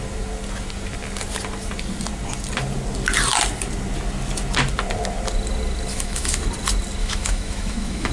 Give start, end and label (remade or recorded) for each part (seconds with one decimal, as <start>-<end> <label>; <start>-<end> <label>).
0.0-5.9 recorded; 5.9-6.4 remade; 6.4-7.0 recorded; 7.0-8.1 remade

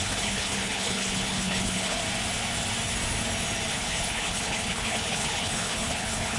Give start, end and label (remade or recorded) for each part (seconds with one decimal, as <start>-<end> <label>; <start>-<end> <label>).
0.0-2.0 remade; 2.0-3.7 recorded; 3.7-6.4 remade

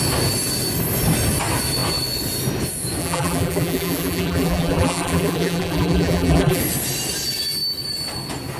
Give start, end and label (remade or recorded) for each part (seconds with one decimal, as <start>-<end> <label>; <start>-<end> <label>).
0.0-3.0 recorded; 3.0-6.6 remade; 6.6-8.6 recorded

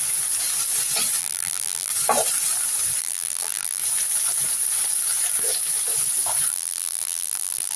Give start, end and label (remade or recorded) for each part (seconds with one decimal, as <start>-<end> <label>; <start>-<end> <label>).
0.0-1.2 recorded; 1.2-1.9 remade; 1.9-3.0 recorded; 3.0-3.8 remade; 3.8-6.5 recorded; 6.5-7.8 remade

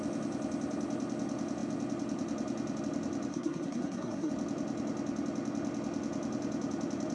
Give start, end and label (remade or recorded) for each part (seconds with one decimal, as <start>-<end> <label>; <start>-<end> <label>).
0.0-3.3 recorded; 3.3-4.3 remade; 4.3-7.1 recorded

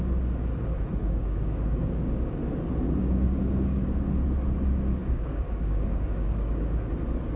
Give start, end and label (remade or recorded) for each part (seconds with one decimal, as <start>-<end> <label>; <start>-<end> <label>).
0.0-1.0 recorded; 1.0-2.4 remade; 2.4-3.0 recorded; 3.0-3.8 remade; 3.8-5.0 recorded; 5.0-6.9 remade; 6.9-7.4 recorded